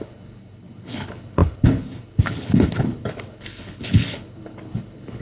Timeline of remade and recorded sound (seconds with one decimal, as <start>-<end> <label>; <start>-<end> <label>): 0.0-5.2 remade